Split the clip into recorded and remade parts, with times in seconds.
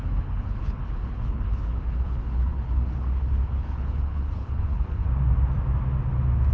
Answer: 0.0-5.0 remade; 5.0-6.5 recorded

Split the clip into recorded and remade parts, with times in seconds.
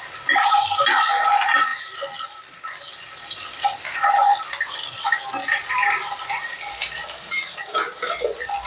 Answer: 0.0-5.4 recorded; 5.4-6.1 remade; 6.1-7.0 recorded; 7.0-7.6 remade; 7.6-8.7 recorded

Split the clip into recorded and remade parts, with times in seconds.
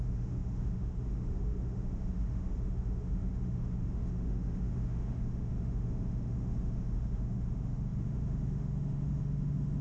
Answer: 0.0-9.8 remade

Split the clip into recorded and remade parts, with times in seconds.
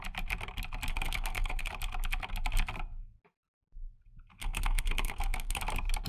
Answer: 0.0-0.9 recorded; 0.9-1.7 remade; 1.7-4.3 recorded; 4.3-5.6 remade; 5.6-6.1 recorded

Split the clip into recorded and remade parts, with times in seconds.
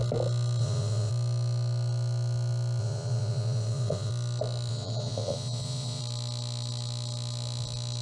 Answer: 0.0-0.6 recorded; 0.6-1.1 remade; 1.1-2.8 recorded; 2.8-4.1 remade; 4.1-4.7 recorded; 4.7-6.0 remade; 6.0-8.0 recorded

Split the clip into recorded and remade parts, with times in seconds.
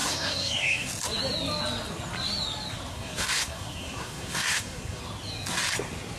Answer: 0.0-0.9 remade; 0.9-2.9 recorded; 2.9-5.0 remade; 5.0-6.2 recorded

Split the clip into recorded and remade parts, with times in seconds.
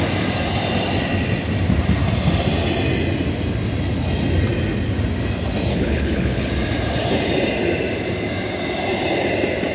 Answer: 0.0-5.7 recorded; 5.7-6.5 remade; 6.5-9.7 recorded